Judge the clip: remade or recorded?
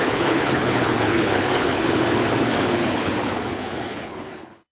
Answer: remade